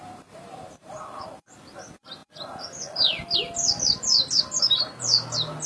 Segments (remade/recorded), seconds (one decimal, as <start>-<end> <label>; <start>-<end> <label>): 0.0-1.0 remade; 1.0-5.7 recorded